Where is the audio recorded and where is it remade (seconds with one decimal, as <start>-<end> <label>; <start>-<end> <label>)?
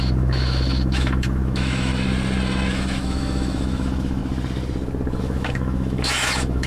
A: 0.0-1.9 remade; 1.9-2.7 recorded; 2.7-4.2 remade; 4.2-5.2 recorded; 5.2-6.7 remade